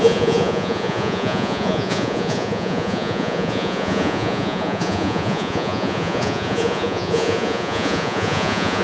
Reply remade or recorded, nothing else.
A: remade